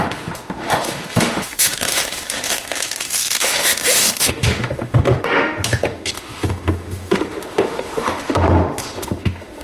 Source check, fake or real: fake